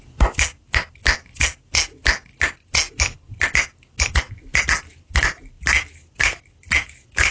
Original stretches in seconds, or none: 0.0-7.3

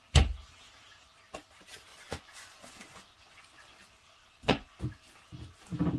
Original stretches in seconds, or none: 0.0-1.9; 3.4-4.2; 4.8-6.0

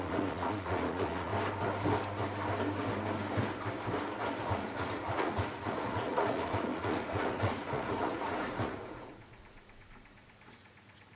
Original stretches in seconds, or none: 1.3-4.3

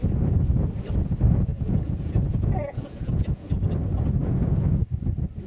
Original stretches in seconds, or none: 0.0-1.5; 3.6-4.2; 4.8-5.5

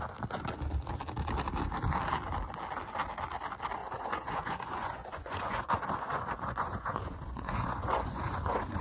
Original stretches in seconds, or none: 0.0-3.8